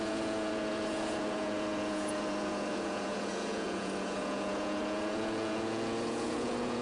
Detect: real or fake fake